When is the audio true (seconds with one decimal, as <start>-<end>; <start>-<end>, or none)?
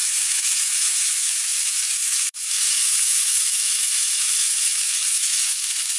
none